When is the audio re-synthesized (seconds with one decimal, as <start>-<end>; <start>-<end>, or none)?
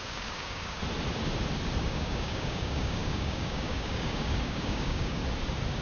0.0-0.8; 1.8-5.2